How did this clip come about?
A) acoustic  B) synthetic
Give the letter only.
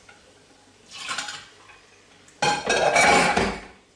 A